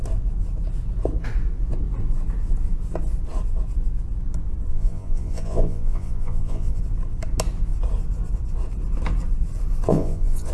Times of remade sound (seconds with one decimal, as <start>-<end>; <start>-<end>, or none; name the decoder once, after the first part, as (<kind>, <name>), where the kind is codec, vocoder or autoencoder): 4.7-6.8 (vocoder, Vocos); 9.9-10.5